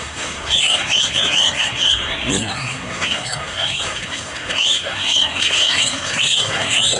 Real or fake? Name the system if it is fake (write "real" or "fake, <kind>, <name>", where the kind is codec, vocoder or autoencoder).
fake, codec, SNAC